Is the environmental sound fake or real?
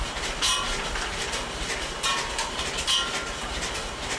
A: real